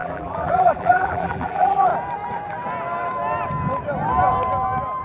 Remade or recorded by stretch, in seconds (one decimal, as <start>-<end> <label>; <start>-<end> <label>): 0.0-1.9 remade; 1.9-5.0 recorded